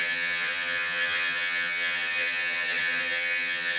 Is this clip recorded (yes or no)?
no